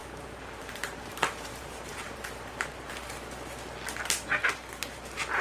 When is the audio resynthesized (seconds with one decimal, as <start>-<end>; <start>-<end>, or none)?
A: 0.0-2.9